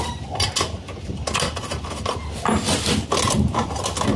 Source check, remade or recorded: recorded